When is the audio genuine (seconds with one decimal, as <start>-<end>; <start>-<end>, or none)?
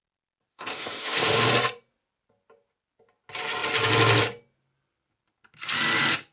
0.0-0.5; 1.5-6.3